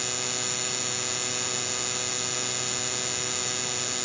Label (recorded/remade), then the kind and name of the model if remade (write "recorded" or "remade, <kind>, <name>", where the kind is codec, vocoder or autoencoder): recorded